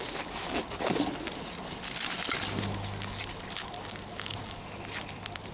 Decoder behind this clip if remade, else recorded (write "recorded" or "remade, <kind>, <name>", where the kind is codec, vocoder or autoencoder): recorded